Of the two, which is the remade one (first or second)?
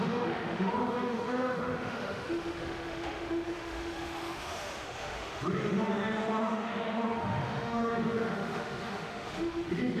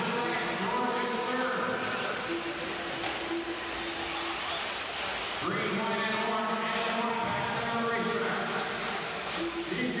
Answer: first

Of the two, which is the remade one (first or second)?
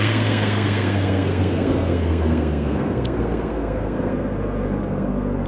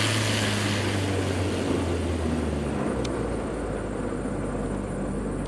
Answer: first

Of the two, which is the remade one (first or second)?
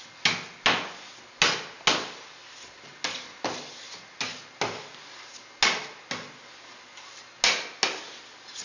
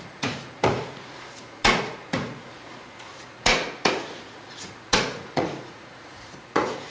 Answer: second